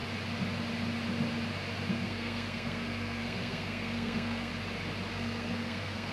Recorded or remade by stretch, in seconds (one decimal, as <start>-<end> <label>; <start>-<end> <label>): 0.0-1.9 recorded; 1.9-4.5 remade; 4.5-5.1 recorded; 5.1-6.1 remade